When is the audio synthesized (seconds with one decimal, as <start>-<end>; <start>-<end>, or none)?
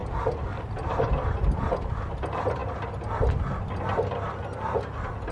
none